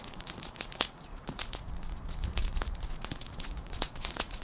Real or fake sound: fake